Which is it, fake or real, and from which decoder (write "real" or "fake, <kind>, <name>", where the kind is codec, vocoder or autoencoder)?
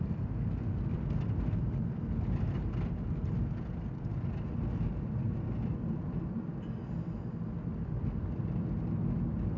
real